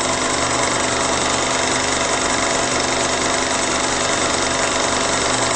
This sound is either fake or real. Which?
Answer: real